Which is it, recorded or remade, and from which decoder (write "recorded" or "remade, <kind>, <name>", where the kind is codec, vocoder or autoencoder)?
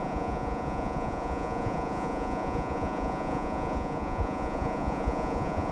remade, vocoder, Vocos